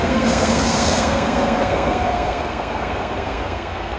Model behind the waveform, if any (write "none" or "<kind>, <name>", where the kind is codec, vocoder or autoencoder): codec, SNAC